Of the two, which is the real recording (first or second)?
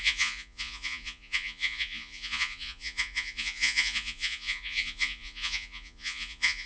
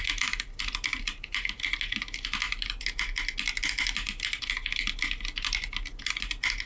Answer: second